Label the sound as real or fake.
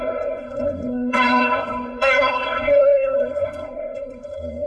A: fake